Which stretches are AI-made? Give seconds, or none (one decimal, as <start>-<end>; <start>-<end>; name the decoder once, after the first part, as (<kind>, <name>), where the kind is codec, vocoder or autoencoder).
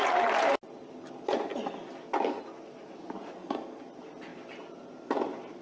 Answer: 3.4-3.9 (codec, DAC)